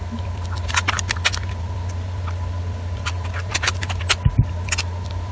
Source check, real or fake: real